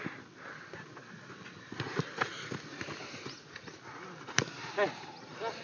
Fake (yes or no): no